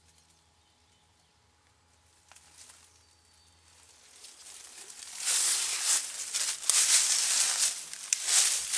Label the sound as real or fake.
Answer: real